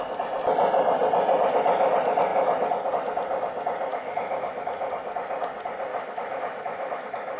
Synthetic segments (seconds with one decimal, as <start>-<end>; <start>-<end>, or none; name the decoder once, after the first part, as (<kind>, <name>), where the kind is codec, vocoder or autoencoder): 3.9-4.9 (autoencoder, DAC-VAE); 5.9-7.4